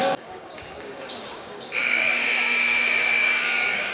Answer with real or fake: fake